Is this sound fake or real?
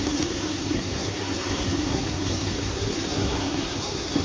fake